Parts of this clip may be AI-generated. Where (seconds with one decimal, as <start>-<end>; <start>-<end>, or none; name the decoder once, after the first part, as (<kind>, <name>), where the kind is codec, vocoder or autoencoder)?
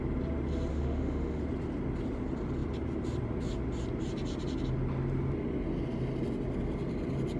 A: 0.7-1.4 (autoencoder, DAC-VAE)